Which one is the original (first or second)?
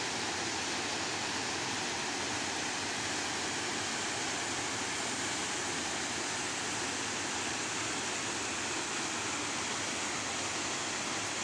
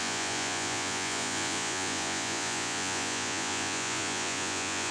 first